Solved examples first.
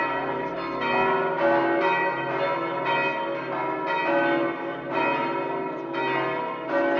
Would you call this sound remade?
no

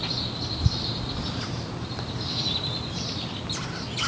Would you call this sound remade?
no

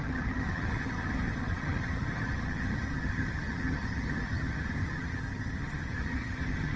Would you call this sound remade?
yes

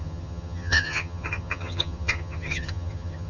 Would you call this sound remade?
yes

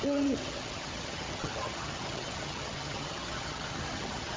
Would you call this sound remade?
yes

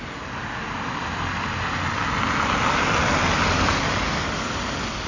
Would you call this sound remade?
no